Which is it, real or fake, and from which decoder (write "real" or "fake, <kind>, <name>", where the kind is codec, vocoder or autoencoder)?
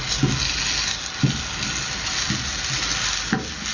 real